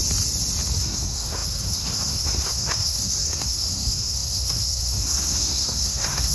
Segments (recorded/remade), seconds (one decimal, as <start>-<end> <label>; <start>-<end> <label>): 0.0-0.8 recorded; 0.8-6.3 remade